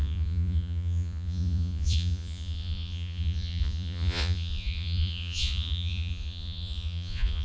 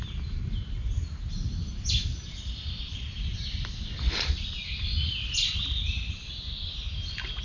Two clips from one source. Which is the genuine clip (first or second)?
second